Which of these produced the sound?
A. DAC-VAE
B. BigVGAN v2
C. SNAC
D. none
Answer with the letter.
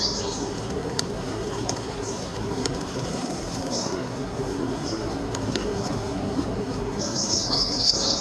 C